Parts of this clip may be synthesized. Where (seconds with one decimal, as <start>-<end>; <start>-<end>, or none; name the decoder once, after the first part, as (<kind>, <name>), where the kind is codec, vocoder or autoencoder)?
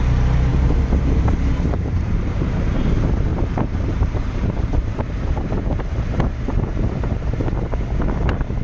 0.5-2.7 (vocoder, BigVGAN v2); 3.3-7.6